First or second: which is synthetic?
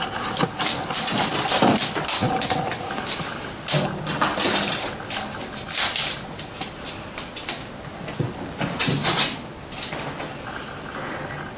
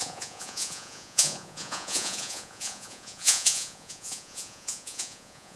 second